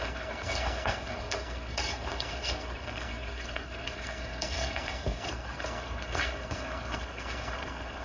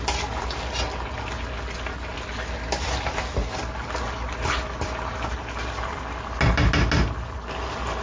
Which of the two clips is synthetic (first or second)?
first